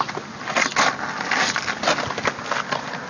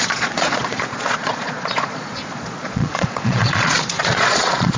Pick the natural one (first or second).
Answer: first